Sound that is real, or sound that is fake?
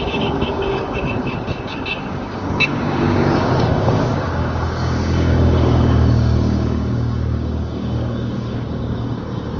fake